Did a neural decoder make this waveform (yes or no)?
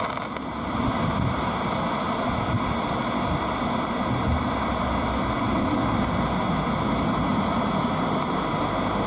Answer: no